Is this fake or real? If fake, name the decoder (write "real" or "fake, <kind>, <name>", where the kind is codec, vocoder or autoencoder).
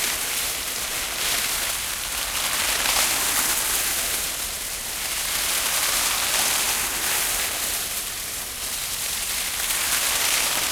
real